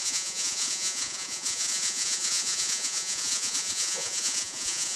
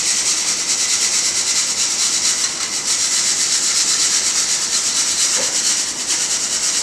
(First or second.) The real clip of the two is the second